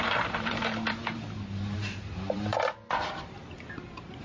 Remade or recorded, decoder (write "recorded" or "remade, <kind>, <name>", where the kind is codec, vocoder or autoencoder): remade, vocoder, BigVGAN v2